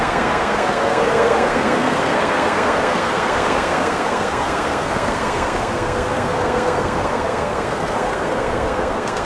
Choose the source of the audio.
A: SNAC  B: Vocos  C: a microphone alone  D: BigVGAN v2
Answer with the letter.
A